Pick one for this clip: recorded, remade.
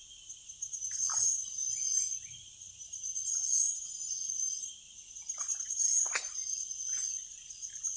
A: recorded